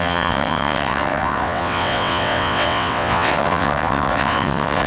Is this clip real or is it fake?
fake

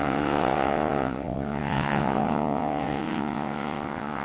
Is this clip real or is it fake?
fake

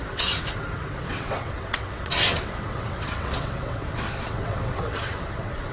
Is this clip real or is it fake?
fake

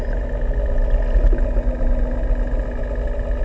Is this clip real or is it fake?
real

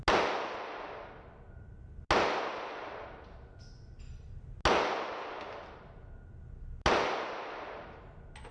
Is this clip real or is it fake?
real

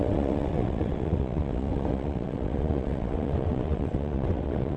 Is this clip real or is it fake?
fake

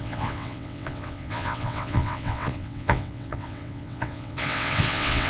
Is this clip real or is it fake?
fake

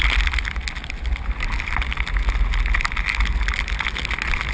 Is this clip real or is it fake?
real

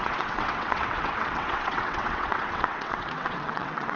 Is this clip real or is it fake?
fake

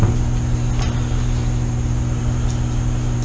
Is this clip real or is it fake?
real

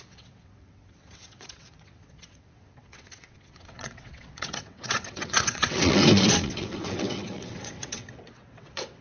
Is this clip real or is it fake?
fake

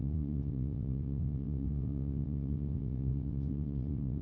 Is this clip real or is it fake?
fake